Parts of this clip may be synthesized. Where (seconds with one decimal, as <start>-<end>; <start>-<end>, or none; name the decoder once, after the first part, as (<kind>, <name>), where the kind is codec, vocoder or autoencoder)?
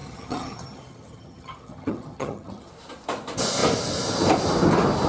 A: 0.0-2.7 (vocoder, HiFi-GAN)